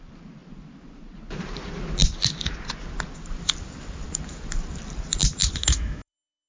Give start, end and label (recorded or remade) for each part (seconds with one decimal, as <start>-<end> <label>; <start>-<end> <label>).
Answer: 0.0-5.6 recorded; 5.6-6.5 remade